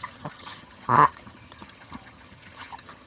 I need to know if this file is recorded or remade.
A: remade